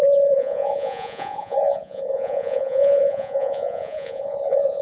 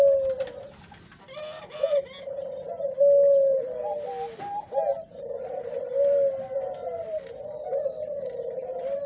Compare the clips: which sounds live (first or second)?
second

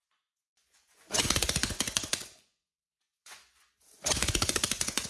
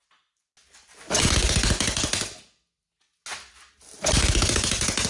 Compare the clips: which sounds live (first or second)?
second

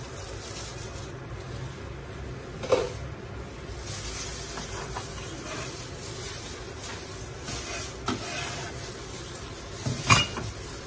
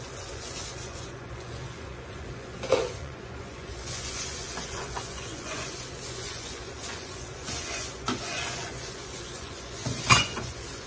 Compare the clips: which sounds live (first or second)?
first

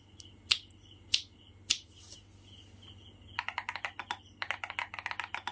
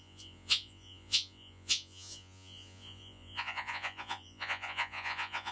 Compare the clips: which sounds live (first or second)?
first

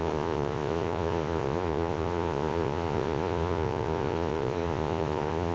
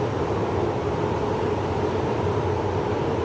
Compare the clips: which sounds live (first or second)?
second